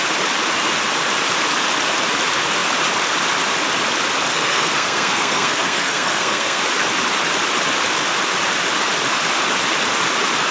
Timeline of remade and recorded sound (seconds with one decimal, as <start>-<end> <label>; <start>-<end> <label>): 0.0-4.3 recorded; 4.3-6.6 remade; 6.6-10.5 recorded